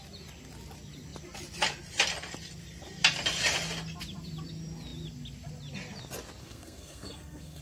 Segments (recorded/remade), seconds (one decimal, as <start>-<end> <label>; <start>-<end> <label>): 0.0-6.4 recorded; 6.4-7.6 remade